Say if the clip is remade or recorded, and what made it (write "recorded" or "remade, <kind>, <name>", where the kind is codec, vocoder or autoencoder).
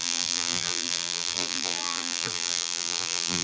remade, vocoder, BigVGAN v2